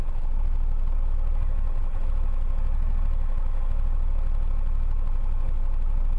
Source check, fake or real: real